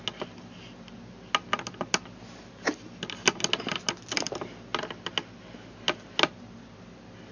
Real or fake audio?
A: real